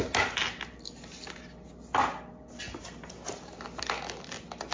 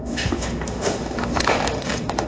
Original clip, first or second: first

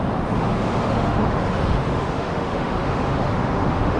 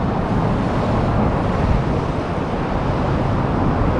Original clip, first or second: second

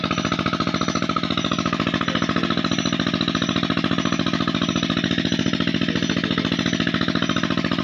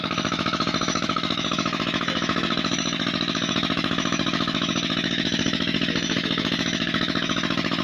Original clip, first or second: first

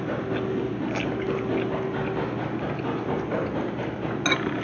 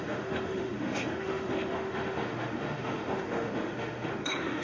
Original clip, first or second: first